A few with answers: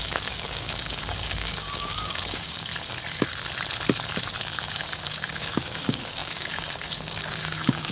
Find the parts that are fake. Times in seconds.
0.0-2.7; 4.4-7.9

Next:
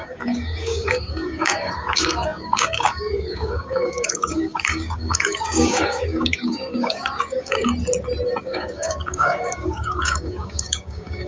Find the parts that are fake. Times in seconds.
0.0-7.7; 8.4-11.3

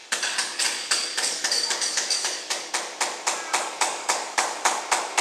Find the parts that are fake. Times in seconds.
0.0-2.7; 3.6-4.8

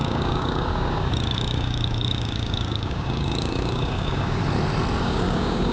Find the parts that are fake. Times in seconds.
0.0-4.4; 5.0-5.7

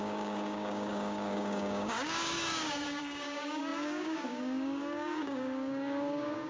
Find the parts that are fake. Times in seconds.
0.0-6.5

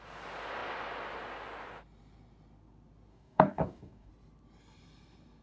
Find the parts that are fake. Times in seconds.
3.1-4.1